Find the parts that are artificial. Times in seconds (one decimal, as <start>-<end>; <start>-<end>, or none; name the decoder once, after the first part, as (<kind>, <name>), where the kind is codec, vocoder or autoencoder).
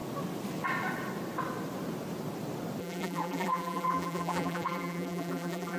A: 2.8-5.8 (vocoder, BigVGAN v2)